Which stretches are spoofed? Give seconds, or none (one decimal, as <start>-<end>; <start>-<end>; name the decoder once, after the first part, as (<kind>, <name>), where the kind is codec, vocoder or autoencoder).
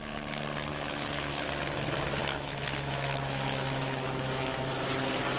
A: 0.7-1.5 (autoencoder, DAC-VAE); 2.2-4.7